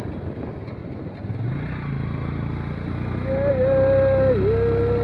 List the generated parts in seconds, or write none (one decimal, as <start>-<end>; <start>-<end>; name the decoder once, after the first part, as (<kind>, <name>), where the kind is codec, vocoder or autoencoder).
none